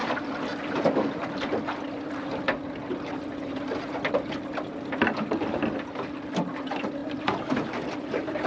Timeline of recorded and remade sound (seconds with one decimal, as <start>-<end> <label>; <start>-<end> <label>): 0.0-7.0 recorded; 7.0-8.5 remade